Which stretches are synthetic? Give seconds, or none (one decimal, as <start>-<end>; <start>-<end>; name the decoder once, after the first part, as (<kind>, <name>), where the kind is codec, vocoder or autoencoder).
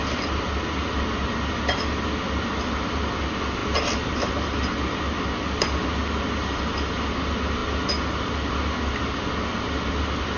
none